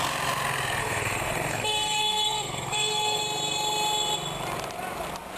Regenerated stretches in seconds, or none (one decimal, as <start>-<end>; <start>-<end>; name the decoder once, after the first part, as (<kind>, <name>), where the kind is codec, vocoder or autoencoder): 0.8-3.2 (codec, SNAC)